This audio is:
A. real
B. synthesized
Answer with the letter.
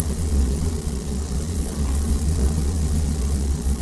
B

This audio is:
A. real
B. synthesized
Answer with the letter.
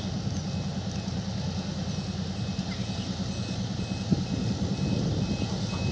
A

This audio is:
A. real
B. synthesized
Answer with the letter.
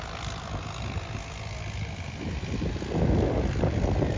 A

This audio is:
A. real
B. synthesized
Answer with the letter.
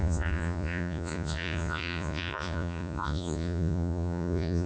B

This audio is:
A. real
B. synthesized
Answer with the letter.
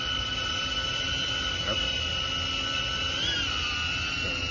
A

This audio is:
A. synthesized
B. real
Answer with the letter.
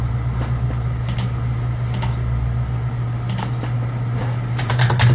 B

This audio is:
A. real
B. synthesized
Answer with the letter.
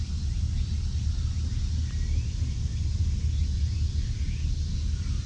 A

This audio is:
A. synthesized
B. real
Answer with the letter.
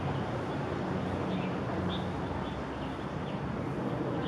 B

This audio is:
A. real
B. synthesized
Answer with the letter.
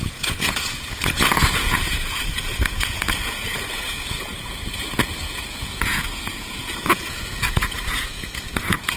B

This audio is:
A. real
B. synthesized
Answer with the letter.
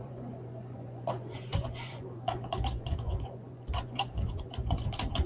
B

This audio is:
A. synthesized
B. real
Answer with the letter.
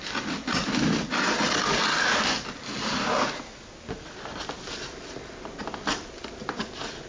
B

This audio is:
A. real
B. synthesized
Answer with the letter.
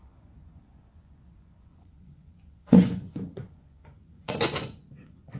B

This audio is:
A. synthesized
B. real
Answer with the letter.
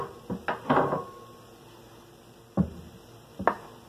B